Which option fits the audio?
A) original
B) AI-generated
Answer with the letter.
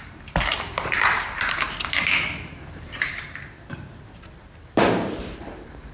B